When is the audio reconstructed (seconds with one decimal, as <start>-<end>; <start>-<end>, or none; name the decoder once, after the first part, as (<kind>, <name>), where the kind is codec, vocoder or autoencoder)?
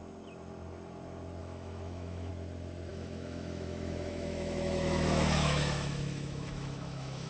1.4-2.3 (autoencoder, DAC-VAE); 2.9-7.3